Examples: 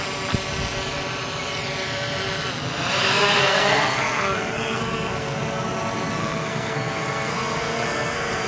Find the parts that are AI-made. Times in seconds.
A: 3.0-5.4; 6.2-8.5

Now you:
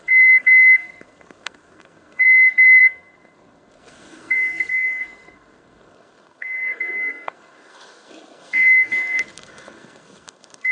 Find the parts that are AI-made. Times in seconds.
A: 0.0-10.7